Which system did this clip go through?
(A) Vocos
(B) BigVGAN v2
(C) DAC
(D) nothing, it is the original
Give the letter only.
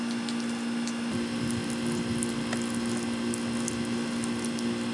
D